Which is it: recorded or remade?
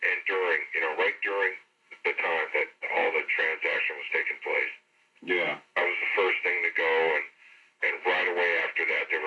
recorded